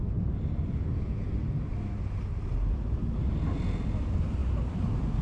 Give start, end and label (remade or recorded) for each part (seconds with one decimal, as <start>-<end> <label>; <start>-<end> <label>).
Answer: 0.0-4.4 recorded; 4.4-5.2 remade